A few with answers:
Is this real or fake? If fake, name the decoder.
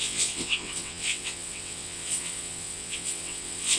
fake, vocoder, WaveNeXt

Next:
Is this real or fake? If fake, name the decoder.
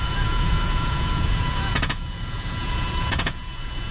fake, vocoder, Vocos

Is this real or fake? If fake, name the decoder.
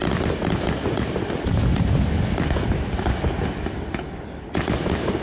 real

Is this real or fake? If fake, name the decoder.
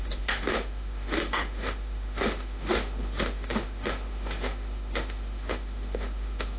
fake, autoencoder, DAC-VAE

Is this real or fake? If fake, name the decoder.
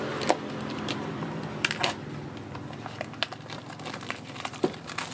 fake, vocoder, BigVGAN v2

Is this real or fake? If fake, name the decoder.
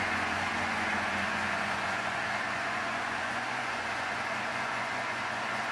fake, vocoder, Vocos